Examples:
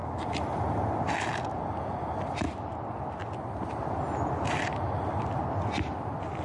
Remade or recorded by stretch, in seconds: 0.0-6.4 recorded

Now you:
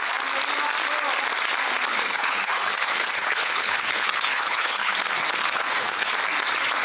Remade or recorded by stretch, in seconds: 0.0-1.9 recorded; 1.9-4.9 remade; 4.9-5.4 recorded; 5.4-6.1 remade; 6.1-6.8 recorded

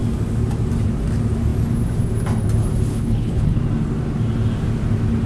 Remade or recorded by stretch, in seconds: 0.0-2.9 recorded; 2.9-3.6 remade; 3.6-5.3 recorded

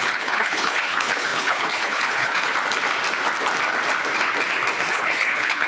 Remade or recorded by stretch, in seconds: 0.0-2.5 remade; 2.5-4.9 recorded; 4.9-5.7 remade

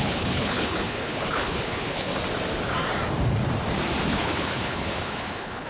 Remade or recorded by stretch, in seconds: 0.0-2.1 remade; 2.1-4.1 recorded; 4.1-5.7 remade

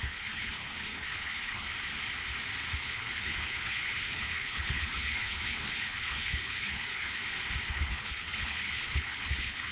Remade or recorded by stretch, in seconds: 0.0-1.7 remade; 1.7-2.8 recorded; 2.8-7.2 remade; 7.2-7.7 recorded; 7.7-9.7 remade